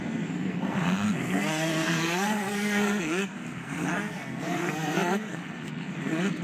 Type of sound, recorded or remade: remade